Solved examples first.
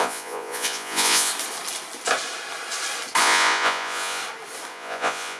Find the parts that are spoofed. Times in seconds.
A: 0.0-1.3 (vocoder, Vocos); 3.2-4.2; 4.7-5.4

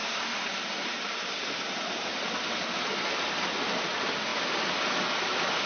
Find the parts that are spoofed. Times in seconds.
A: 0.0-2.2 (vocoder, BigVGAN v2)